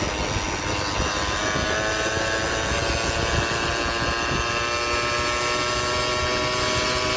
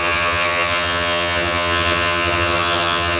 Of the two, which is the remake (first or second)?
second